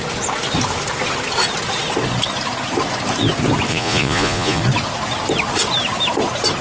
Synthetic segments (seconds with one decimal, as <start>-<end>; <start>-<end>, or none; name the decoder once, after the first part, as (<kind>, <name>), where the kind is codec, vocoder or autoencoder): 3.7-4.6 (vocoder, Vocos)